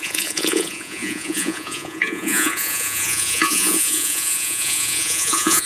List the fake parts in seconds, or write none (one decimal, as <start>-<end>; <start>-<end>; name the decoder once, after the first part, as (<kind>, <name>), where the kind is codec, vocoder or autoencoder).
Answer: 0.0-5.7 (vocoder, Vocos)